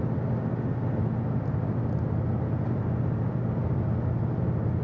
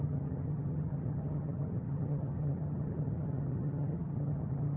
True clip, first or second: first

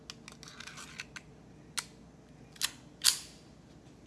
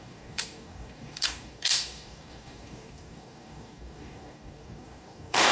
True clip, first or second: first